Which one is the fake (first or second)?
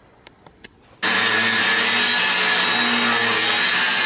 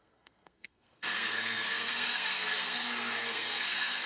second